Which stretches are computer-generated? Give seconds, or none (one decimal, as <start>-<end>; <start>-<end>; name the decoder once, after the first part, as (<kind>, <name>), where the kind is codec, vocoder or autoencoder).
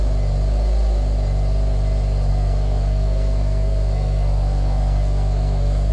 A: 2.3-5.9 (codec, SNAC)